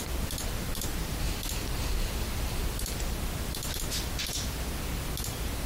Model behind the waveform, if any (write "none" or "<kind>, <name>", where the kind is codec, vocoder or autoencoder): none